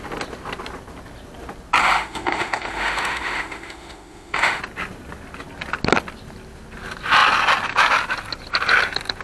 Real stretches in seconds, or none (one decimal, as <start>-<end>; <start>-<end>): 0.0-1.8; 4.6-9.2